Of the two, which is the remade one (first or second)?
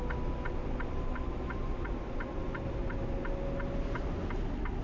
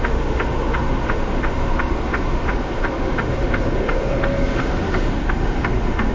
second